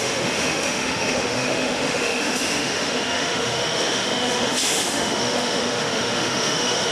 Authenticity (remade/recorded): remade